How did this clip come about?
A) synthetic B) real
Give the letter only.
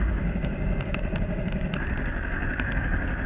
A